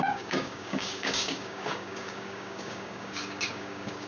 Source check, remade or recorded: remade